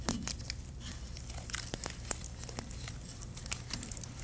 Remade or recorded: recorded